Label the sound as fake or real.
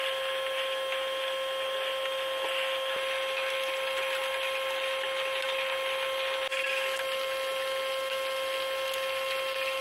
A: real